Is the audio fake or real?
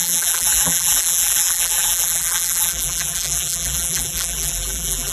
fake